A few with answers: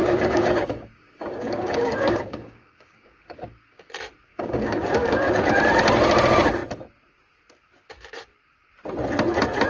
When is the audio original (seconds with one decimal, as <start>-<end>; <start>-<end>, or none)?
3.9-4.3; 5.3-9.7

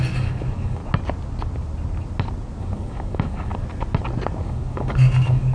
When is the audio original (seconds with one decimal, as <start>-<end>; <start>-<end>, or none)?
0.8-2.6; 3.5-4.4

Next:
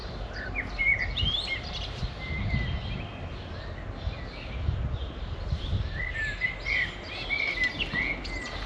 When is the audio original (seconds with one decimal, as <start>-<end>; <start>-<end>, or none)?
0.0-8.7

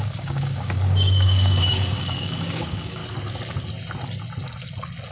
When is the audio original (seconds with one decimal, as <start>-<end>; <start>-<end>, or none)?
3.0-5.1

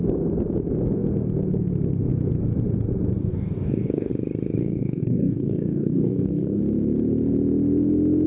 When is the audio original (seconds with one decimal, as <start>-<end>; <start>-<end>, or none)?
0.0-3.2; 4.1-4.6; 6.6-8.3

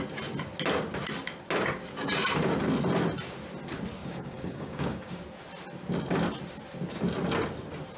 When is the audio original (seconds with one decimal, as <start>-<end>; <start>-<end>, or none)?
0.0-4.0; 5.2-8.0